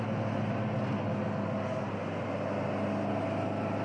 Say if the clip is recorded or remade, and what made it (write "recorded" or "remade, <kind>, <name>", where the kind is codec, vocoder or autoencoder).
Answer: recorded